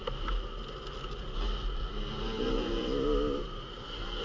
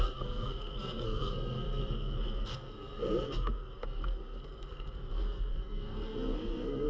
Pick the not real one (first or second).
second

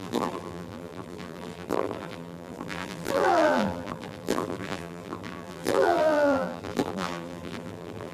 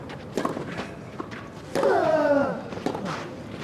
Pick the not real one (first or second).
first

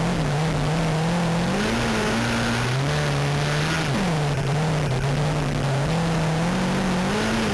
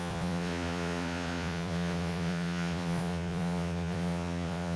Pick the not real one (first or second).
second